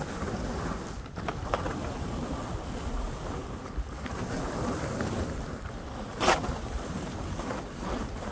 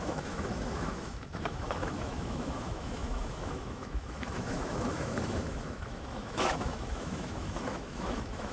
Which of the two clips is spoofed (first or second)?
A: second